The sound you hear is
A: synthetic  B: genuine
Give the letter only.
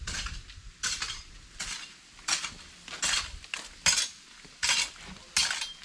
B